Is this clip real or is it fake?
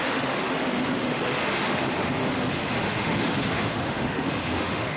fake